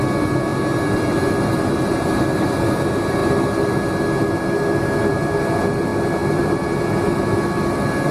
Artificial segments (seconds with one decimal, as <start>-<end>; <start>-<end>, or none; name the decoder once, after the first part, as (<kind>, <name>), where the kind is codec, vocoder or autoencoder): 0.5-1.8 (vocoder, BigVGAN v2); 5.9-8.1